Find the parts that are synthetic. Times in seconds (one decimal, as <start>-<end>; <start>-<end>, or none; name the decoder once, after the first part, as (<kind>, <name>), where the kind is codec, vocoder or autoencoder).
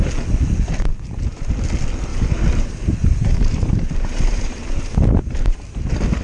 0.9-1.5 (vocoder, BigVGAN v2); 2.1-5.8